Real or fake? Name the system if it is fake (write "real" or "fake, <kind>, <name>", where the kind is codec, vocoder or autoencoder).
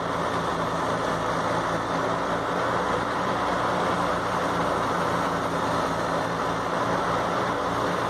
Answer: real